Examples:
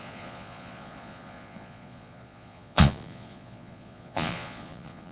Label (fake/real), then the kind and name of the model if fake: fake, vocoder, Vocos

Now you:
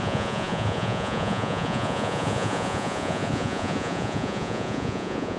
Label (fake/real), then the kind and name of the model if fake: fake, vocoder, Vocos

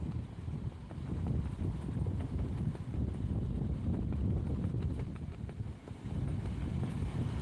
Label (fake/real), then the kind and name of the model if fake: real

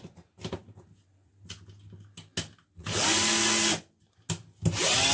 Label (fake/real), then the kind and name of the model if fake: real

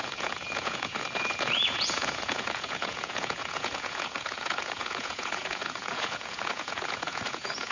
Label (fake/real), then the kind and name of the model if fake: fake, vocoder, Vocos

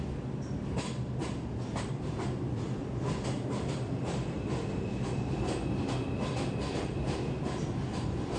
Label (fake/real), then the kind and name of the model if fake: real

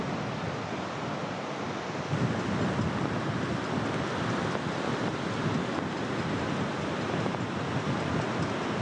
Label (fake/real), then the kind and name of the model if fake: real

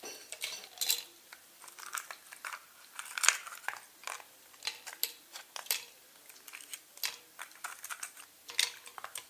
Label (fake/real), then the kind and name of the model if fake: real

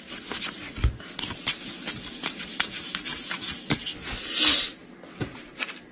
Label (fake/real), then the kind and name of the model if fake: real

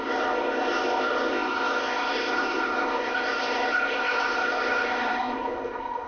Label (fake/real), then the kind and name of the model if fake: fake, codec, ZipCodec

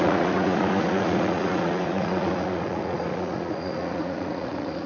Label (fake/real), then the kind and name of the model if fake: fake, vocoder, Vocos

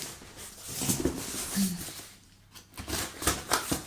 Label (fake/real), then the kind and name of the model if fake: real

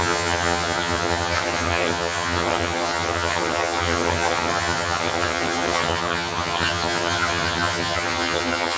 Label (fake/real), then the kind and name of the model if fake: fake, vocoder, HiFi-GAN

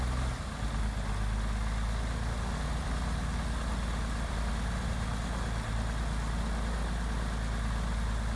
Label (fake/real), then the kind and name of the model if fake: real